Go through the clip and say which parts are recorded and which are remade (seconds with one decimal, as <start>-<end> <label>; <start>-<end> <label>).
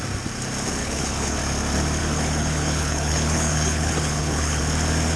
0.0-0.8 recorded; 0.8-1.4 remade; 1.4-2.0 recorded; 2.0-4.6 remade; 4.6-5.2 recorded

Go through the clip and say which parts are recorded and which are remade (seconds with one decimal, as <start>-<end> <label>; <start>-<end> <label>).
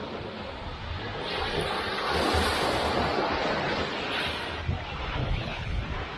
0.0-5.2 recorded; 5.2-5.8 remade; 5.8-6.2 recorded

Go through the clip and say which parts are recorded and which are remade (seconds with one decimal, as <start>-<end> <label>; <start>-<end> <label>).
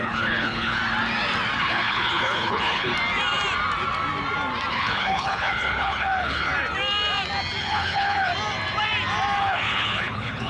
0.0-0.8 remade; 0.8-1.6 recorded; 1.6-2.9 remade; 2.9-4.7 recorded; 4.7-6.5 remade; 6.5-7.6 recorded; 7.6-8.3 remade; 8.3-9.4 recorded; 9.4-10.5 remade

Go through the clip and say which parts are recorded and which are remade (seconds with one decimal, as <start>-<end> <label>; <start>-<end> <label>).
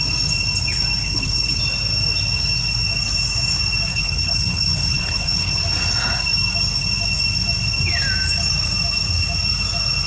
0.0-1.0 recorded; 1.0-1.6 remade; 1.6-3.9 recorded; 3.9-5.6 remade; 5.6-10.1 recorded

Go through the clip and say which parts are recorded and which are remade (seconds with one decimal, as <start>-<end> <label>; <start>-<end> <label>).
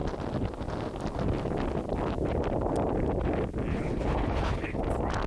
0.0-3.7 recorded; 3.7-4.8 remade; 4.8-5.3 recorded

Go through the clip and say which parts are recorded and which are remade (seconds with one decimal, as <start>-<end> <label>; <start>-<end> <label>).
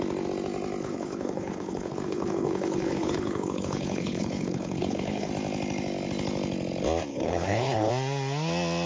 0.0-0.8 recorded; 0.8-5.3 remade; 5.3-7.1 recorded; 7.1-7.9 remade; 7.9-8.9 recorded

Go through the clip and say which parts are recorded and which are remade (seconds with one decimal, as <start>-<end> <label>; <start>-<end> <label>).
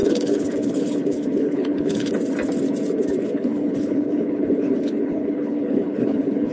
0.0-2.1 remade; 2.1-3.2 recorded; 3.2-6.5 remade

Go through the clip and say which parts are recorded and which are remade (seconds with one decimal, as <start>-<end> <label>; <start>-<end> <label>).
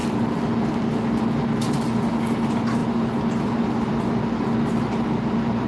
0.0-5.7 recorded